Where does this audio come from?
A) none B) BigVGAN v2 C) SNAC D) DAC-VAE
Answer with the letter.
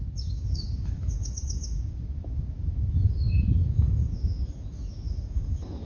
D